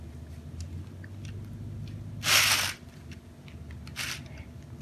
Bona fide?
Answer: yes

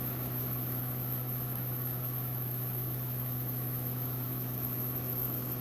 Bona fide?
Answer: no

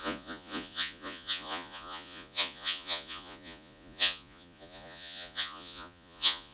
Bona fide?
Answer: no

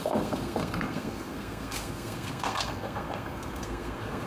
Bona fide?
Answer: no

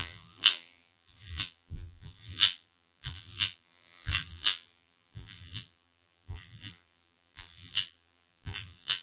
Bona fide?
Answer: no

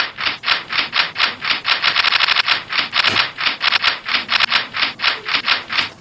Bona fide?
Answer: yes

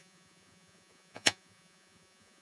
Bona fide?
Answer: no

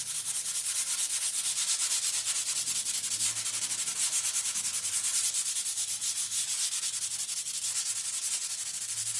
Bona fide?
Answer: yes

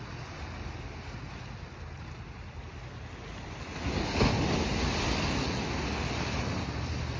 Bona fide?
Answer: yes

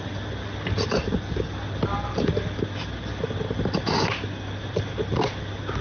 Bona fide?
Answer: yes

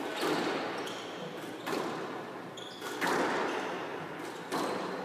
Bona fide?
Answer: yes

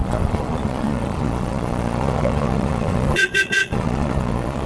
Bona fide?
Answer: no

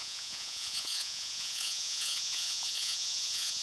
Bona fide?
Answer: no